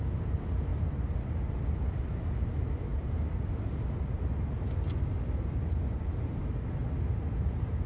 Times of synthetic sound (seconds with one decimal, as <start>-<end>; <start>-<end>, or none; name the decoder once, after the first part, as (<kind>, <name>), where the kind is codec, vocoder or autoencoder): 0.7-2.0 (vocoder, BigVGAN v2); 2.9-4.8; 6.8-7.9